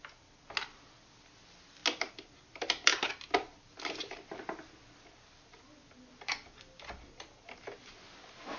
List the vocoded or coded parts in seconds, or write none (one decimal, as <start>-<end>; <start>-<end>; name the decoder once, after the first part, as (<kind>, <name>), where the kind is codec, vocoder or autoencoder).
none